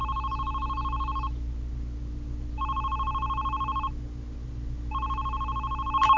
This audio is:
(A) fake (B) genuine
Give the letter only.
B